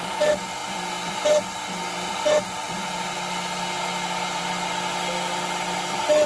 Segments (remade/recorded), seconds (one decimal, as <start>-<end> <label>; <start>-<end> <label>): 0.0-6.3 recorded